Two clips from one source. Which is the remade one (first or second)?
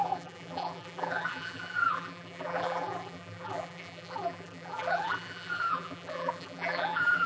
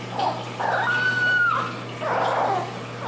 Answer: first